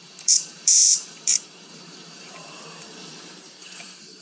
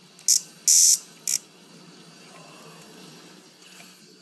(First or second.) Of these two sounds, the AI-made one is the first